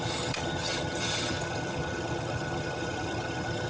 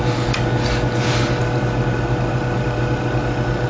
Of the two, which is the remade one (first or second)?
first